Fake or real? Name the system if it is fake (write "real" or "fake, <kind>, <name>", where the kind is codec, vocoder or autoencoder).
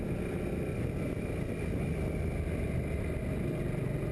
real